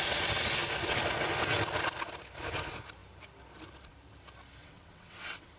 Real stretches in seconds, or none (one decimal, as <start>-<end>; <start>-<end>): 0.0-4.6